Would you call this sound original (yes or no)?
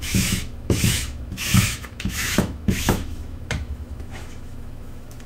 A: no